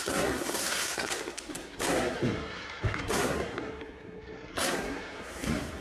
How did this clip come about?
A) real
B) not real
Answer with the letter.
B